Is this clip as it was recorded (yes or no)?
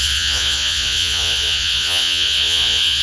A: no